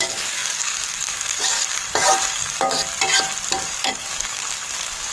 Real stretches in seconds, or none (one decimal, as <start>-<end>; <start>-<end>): 2.8-3.6